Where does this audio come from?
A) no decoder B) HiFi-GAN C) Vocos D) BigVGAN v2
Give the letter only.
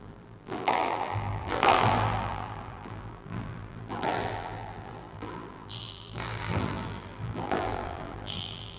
D